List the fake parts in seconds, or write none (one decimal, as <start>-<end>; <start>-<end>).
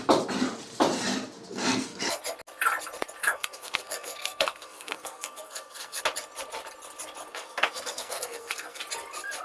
1.5-2.2; 3.2-6.0; 7.3-8.8